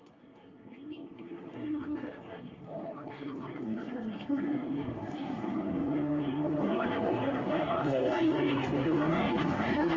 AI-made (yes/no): yes